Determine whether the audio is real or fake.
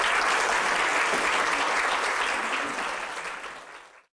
real